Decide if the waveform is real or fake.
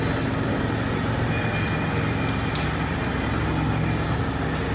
real